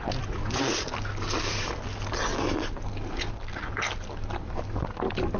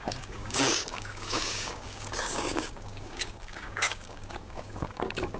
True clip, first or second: first